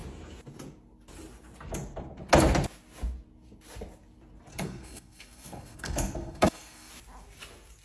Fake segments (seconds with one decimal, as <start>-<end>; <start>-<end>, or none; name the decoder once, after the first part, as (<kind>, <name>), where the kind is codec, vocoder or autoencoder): 4.5-6.9 (codec, SNAC)